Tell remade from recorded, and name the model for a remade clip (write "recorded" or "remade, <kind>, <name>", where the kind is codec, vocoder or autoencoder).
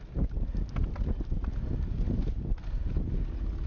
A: recorded